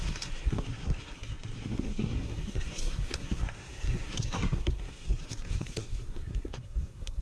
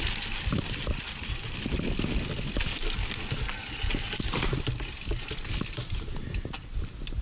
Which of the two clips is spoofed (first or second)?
first